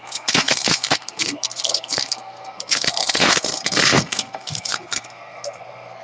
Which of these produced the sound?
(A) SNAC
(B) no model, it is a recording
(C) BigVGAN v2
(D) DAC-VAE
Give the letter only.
A